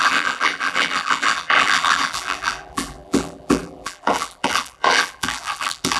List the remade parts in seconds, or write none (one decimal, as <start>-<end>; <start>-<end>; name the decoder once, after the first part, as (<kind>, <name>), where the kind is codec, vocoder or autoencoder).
0.0-6.0 (vocoder, BigVGAN v2)